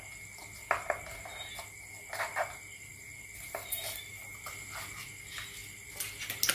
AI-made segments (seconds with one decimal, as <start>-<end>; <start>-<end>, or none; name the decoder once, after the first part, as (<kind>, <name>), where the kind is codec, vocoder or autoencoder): none